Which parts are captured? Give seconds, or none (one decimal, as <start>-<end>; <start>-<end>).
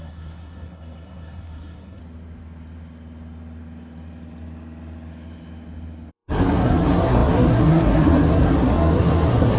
2.0-6.1